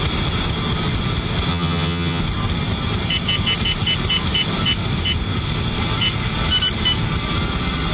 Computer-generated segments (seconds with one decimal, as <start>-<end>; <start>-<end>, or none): 1.5-2.2